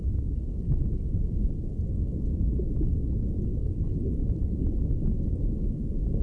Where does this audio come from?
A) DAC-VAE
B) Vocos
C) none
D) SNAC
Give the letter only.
C